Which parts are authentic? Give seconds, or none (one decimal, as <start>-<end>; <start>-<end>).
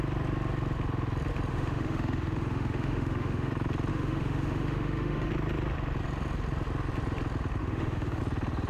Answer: 0.0-1.5; 3.5-3.9; 5.3-7.6; 8.2-8.7